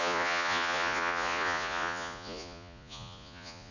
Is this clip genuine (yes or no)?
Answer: no